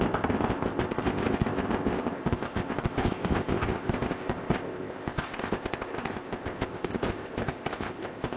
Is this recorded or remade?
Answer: remade